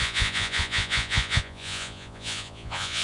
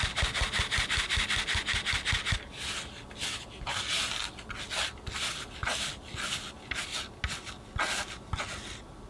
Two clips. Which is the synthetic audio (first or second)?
first